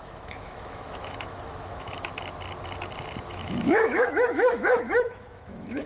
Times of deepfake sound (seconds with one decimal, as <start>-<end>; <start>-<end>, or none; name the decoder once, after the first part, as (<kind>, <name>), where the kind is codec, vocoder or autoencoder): 0.0-2.1 (autoencoder, DAC-VAE); 3.3-5.9